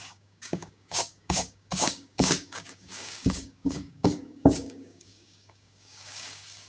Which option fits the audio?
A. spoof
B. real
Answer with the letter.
A